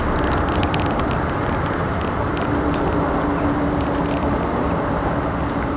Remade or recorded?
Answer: recorded